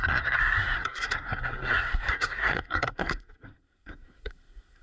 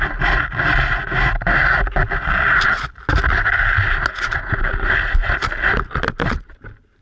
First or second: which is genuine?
second